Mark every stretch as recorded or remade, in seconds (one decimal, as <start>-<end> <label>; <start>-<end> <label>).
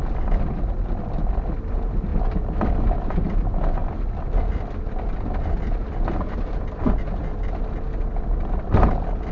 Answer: 0.0-9.3 recorded